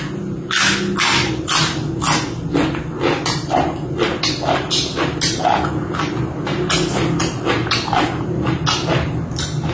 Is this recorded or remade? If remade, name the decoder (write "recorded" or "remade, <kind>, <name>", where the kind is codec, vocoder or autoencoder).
recorded